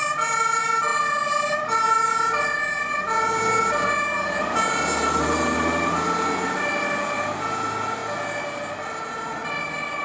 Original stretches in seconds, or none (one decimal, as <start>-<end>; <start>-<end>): 0.0-10.0